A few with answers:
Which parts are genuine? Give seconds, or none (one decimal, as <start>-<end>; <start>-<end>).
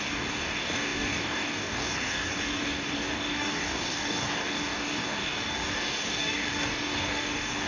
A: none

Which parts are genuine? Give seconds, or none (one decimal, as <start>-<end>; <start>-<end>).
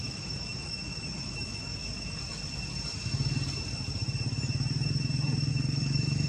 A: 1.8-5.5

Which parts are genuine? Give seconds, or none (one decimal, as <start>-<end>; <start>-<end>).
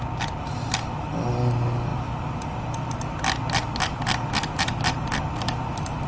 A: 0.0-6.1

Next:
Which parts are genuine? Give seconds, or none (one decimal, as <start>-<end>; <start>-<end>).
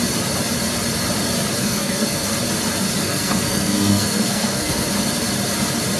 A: 0.0-1.6; 2.3-3.0; 4.9-6.0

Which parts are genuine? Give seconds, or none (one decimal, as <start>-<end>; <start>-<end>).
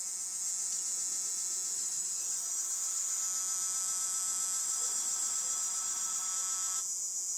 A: 0.0-1.7; 3.2-4.6; 6.3-7.4